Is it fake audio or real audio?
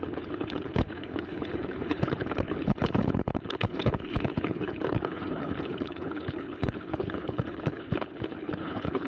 fake